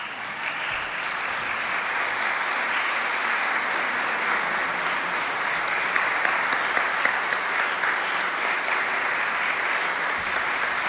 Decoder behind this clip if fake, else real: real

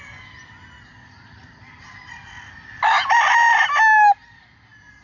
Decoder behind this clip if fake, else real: real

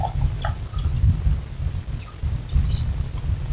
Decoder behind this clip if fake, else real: real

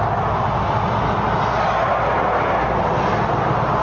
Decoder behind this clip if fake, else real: real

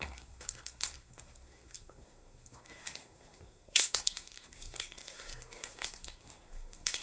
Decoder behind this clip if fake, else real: fake, codec, SNAC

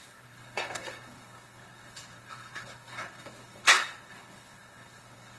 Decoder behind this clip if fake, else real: fake, codec, HILCodec